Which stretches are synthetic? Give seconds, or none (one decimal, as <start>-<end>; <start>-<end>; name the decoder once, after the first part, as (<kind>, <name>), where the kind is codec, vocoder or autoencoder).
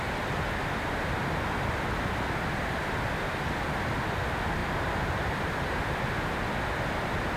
4.6-6.0 (vocoder, BigVGAN v2)